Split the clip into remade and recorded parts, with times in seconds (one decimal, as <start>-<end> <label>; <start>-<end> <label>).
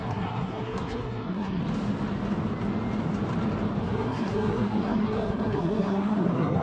0.0-1.6 remade; 1.6-3.8 recorded; 3.8-6.6 remade